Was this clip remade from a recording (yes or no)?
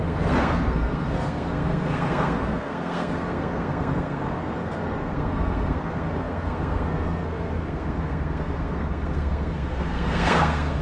yes